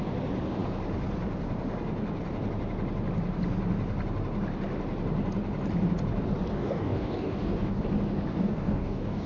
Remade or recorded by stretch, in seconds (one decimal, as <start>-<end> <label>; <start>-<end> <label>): 0.0-6.5 recorded; 6.5-7.8 remade; 7.8-8.3 recorded; 8.3-9.3 remade